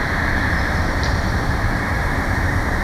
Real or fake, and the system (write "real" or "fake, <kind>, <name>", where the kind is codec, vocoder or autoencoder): fake, vocoder, BigVGAN v2